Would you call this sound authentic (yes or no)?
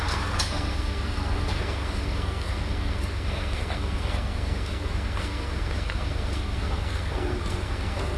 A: no